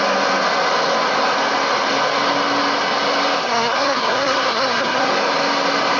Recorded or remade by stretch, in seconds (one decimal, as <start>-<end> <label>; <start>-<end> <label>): 0.0-3.4 recorded; 3.4-5.1 remade; 5.1-6.0 recorded